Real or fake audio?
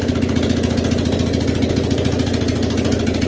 real